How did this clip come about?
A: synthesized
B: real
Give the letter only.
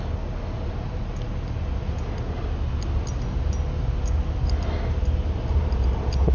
B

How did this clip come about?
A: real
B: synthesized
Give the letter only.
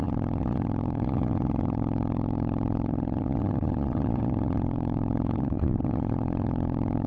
B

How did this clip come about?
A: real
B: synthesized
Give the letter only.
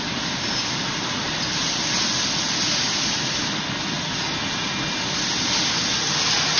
A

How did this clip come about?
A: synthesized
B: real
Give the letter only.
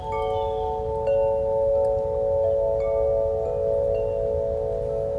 B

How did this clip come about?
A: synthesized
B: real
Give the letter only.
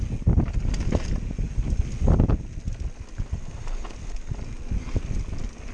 B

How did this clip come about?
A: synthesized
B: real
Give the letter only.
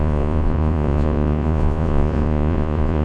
A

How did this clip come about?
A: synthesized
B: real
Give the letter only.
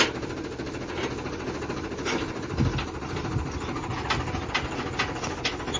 B